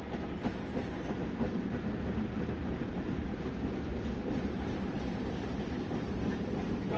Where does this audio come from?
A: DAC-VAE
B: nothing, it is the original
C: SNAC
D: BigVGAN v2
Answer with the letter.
D